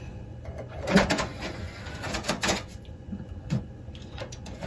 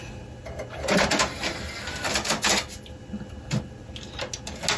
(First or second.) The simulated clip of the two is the first